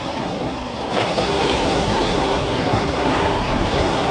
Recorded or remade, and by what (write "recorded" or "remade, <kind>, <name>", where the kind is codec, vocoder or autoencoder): remade, codec, SNAC